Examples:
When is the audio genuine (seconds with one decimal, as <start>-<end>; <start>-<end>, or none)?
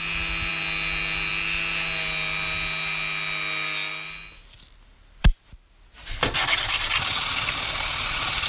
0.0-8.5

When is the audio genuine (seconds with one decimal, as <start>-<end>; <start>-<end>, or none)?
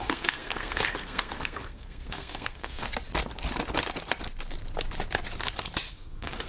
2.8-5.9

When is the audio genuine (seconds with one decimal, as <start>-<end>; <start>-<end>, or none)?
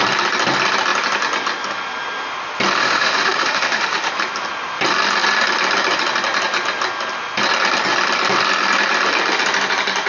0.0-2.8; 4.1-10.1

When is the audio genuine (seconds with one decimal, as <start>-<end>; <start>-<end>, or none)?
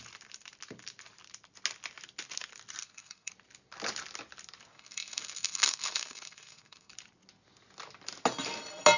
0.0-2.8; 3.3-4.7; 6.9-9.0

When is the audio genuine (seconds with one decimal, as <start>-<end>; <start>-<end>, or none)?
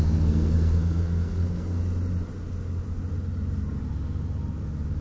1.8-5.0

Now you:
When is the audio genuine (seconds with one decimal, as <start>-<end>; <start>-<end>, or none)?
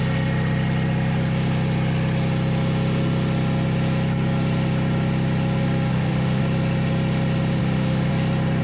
0.0-5.9; 6.4-7.6; 8.1-8.6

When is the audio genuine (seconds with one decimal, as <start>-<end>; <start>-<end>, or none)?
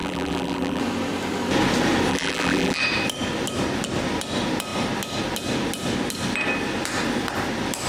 0.8-2.1; 2.8-7.9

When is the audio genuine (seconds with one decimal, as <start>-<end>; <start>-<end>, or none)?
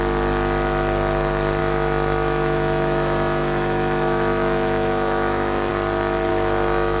0.0-1.6; 5.7-6.3